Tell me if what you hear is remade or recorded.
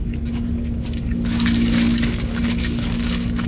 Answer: remade